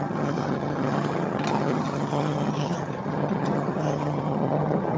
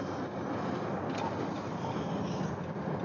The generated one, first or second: first